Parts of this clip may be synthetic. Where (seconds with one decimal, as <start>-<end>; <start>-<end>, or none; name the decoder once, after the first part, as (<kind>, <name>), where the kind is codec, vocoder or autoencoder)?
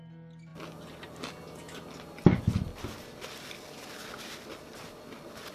none